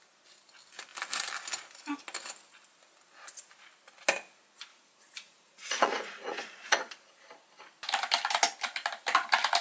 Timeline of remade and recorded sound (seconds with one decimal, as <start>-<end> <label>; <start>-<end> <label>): 0.0-4.7 recorded; 4.7-6.9 remade; 6.9-9.6 recorded